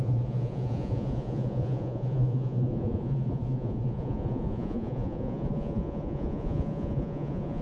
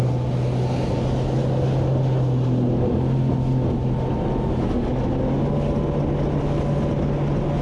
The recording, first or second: second